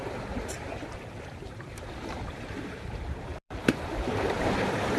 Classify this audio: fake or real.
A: fake